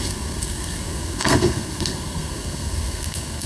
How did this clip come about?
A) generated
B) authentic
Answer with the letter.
A